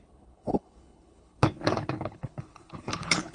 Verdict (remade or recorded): remade